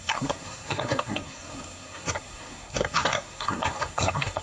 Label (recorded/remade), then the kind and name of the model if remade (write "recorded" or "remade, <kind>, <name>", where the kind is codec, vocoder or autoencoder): remade, codec, SNAC